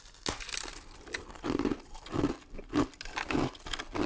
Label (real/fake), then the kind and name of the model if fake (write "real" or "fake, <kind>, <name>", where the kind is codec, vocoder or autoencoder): real